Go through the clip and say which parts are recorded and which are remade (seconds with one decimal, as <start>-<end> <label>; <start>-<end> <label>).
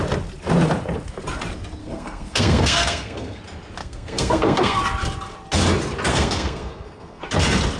0.0-1.8 recorded; 1.8-3.4 remade; 3.4-3.8 recorded; 3.8-4.8 remade; 4.8-6.1 recorded; 6.1-7.2 remade; 7.2-7.8 recorded